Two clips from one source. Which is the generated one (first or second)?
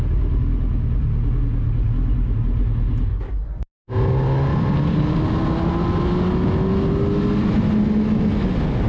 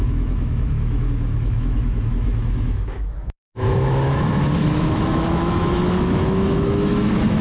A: second